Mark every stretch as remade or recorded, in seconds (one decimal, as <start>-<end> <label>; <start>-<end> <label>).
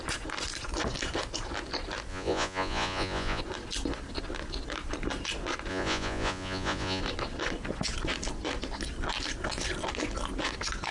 0.0-2.1 recorded; 2.1-3.4 remade; 3.4-5.7 recorded; 5.7-7.0 remade; 7.0-10.9 recorded